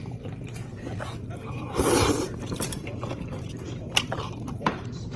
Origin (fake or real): fake